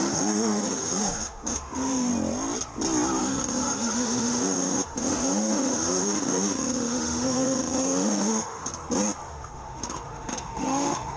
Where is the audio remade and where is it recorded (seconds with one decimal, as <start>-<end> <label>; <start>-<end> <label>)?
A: 0.0-2.1 remade; 2.1-3.2 recorded; 3.2-8.7 remade; 8.7-9.3 recorded; 9.3-11.2 remade